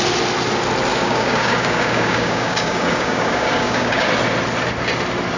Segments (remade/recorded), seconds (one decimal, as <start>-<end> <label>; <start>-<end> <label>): 0.0-0.9 recorded; 0.9-4.1 remade; 4.1-5.4 recorded

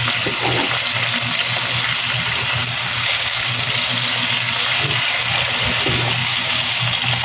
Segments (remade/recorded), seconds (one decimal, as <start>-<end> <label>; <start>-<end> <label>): 0.0-2.6 recorded; 2.6-3.7 remade; 3.7-6.2 recorded; 6.2-6.8 remade; 6.8-7.2 recorded

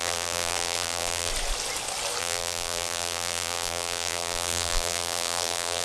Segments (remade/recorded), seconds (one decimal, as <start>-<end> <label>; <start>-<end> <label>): 0.0-1.3 remade; 1.3-2.2 recorded; 2.2-5.8 remade

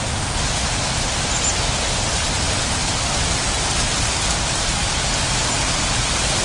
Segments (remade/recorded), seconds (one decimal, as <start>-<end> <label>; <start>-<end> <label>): 0.0-6.4 recorded

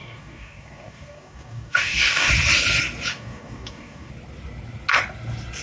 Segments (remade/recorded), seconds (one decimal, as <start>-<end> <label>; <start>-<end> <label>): 0.0-2.3 remade; 2.3-3.1 recorded; 3.1-4.1 remade; 4.1-5.6 recorded

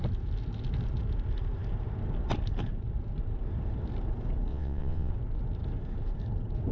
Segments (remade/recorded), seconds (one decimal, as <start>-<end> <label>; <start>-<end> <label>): 0.0-4.5 recorded; 4.5-5.1 remade; 5.1-6.7 recorded